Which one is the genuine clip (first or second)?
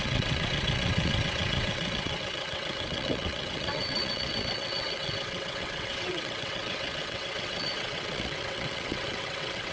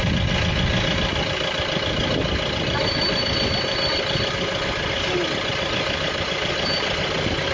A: second